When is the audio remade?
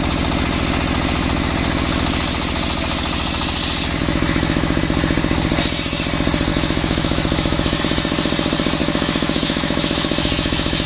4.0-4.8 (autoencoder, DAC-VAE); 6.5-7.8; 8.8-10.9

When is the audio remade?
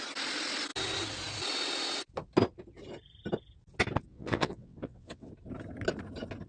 4.1-5.3 (vocoder, WaveNeXt)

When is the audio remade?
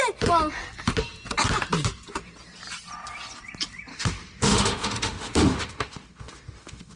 3.9-7.0 (autoencoder, DAC-VAE)